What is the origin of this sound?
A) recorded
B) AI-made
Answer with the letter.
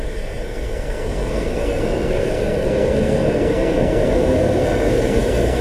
B